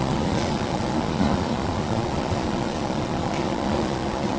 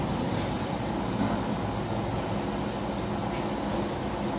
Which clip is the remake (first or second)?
first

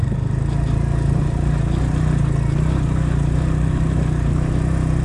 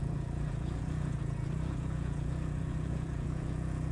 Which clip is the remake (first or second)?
second